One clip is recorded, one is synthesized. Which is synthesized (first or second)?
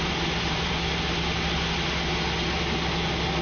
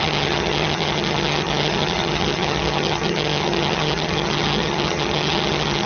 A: second